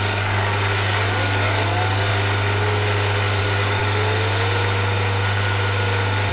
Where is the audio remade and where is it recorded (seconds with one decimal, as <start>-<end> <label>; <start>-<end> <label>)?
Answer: 0.0-2.1 remade; 2.1-3.4 recorded; 3.4-3.8 remade; 3.8-6.3 recorded